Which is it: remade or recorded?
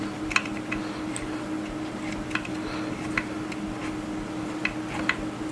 recorded